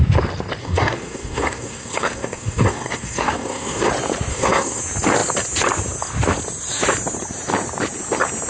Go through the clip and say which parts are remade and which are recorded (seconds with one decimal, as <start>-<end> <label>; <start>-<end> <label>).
0.0-0.6 recorded; 0.6-3.9 remade; 3.9-4.3 recorded; 4.3-4.8 remade; 4.8-8.5 recorded